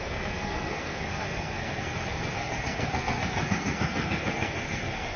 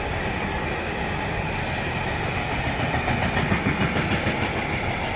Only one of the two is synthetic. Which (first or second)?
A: first